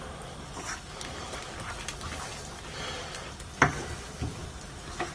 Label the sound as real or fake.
real